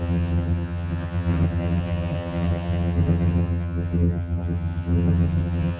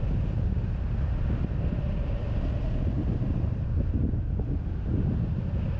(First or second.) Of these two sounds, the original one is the second